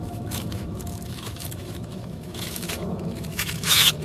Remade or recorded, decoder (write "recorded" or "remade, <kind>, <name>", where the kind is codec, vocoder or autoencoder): remade, autoencoder, DAC-VAE